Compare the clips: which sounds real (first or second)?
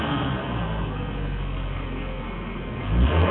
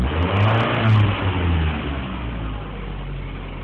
second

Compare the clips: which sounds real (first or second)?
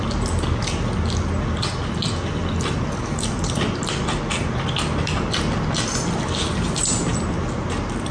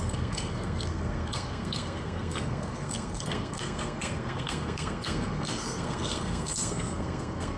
first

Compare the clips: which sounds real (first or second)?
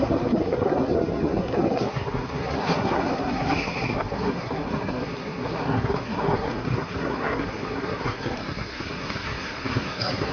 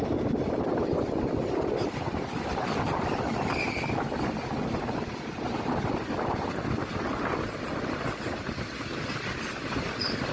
second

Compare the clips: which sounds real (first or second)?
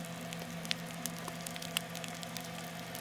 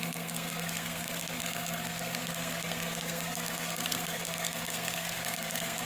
first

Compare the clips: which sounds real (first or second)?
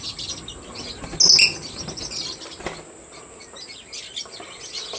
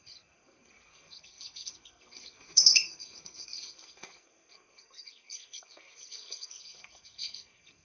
first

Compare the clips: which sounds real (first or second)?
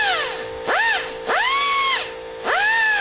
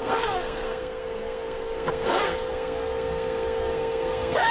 first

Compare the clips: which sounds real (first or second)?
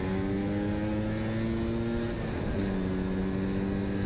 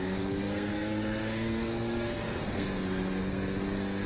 first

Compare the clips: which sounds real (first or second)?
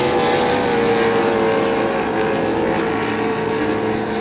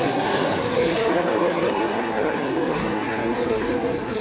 first